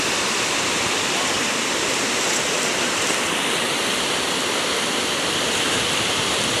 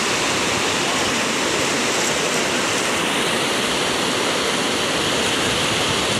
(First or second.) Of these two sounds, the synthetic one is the first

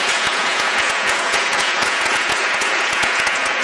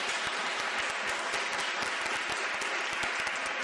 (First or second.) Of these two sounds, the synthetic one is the first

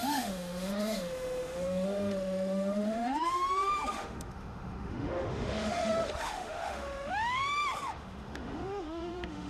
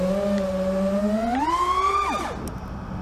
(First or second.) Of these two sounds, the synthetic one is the first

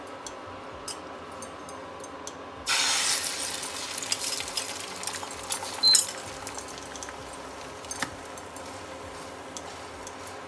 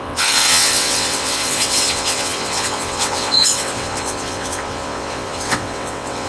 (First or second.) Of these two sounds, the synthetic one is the second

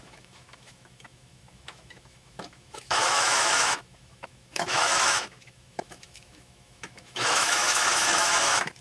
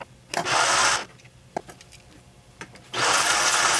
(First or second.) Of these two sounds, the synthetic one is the first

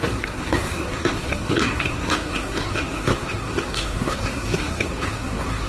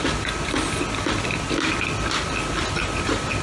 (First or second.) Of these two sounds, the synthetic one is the first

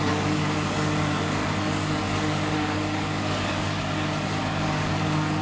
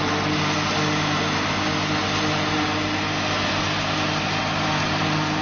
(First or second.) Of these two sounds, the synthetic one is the first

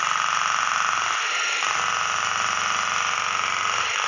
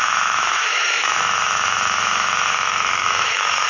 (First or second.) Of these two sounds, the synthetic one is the second